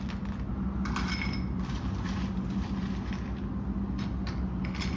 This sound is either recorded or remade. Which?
recorded